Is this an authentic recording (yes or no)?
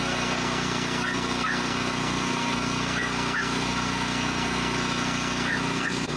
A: no